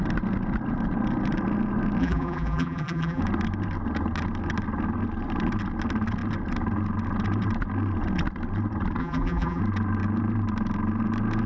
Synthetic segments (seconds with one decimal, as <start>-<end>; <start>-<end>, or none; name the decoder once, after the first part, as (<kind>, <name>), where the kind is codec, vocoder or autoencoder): 2.0-3.2 (vocoder, BigVGAN v2); 9.0-9.6